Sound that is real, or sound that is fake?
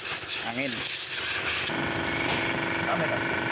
real